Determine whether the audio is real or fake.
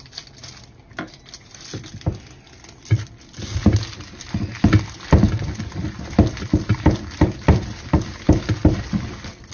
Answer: real